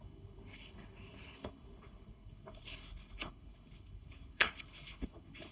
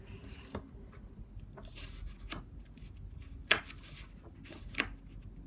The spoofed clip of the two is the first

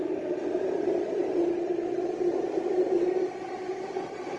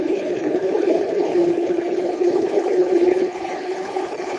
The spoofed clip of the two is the second